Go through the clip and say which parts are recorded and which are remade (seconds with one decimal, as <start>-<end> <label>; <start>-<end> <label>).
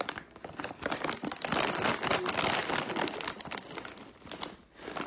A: 0.0-5.1 recorded